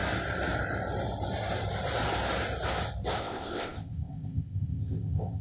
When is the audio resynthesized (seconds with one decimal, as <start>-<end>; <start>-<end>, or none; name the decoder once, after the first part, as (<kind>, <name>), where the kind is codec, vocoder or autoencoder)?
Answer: 3.2-5.4 (codec, ZipCodec)